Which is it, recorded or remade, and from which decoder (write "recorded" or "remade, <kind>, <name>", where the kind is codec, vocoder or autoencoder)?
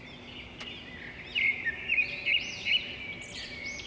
recorded